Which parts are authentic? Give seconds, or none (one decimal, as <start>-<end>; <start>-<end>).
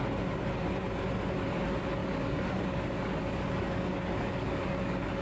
0.0-2.0